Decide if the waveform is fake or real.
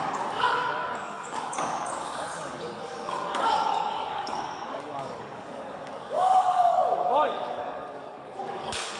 fake